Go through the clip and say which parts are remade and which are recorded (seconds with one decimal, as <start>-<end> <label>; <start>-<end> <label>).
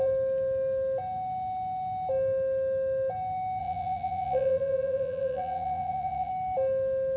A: 0.0-3.6 recorded; 3.6-6.3 remade; 6.3-7.2 recorded